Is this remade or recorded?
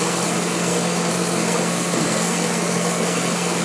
remade